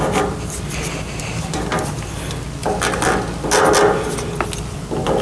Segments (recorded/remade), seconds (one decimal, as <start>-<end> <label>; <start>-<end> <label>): 0.0-5.2 recorded